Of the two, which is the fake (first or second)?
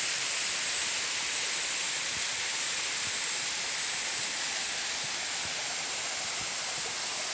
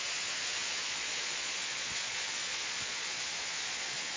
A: second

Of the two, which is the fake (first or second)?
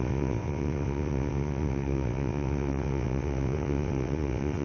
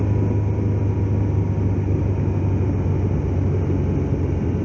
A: first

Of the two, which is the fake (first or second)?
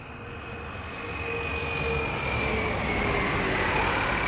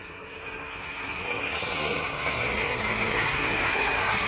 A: second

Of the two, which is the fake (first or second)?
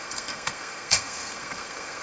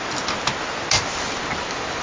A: first